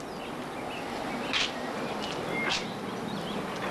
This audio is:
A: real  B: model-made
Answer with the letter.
A